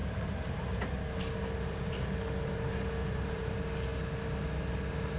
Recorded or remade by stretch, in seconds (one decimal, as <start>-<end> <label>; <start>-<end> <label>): 0.0-0.8 remade; 0.8-3.0 recorded; 3.0-3.5 remade; 3.5-5.2 recorded

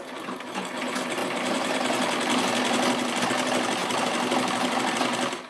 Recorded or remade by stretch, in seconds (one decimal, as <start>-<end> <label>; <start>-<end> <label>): 0.0-5.5 recorded

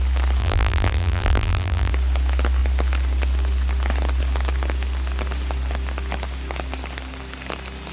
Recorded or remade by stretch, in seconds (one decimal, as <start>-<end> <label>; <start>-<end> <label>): 0.0-0.4 recorded; 0.4-1.9 remade; 1.9-7.9 recorded

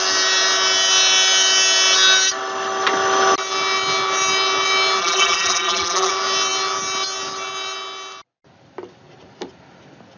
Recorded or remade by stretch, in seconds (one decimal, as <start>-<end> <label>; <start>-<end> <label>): 0.0-5.0 recorded; 5.0-6.1 remade; 6.1-10.2 recorded

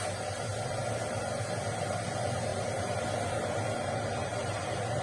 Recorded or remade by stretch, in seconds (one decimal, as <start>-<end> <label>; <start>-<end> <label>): 0.0-0.5 recorded; 0.5-1.3 remade; 1.3-4.3 recorded; 4.3-5.0 remade

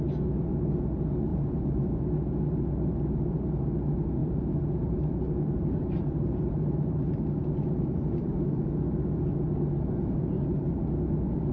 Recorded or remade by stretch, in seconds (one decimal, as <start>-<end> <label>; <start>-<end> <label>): 0.0-1.3 recorded; 1.3-2.0 remade; 2.0-4.2 recorded; 4.2-8.4 remade; 8.4-11.5 recorded

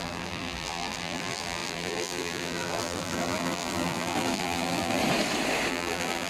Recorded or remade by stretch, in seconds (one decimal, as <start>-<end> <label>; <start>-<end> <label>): 0.0-5.0 remade; 5.0-5.7 recorded; 5.7-6.3 remade